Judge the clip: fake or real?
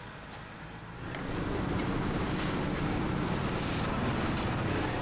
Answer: real